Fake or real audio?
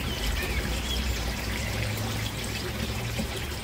fake